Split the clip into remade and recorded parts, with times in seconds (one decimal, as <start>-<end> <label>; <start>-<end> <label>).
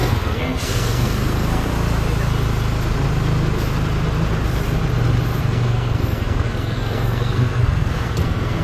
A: 0.0-1.7 remade; 1.7-5.4 recorded; 5.4-8.6 remade